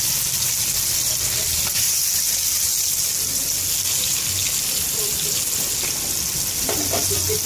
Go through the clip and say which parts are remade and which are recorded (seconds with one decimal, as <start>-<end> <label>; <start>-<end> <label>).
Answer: 0.0-7.5 recorded